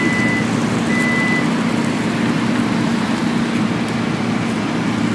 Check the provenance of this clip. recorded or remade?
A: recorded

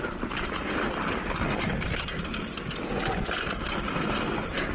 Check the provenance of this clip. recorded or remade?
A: recorded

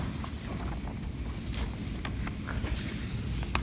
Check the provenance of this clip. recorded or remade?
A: recorded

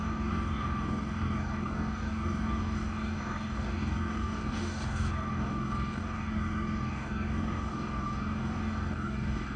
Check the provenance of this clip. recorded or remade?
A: remade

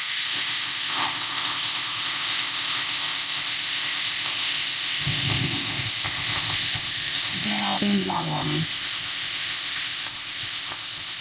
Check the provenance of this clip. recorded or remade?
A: remade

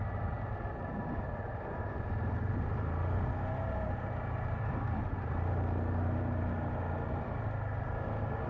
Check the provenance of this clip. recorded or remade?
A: recorded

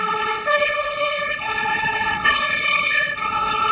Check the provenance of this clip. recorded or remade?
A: remade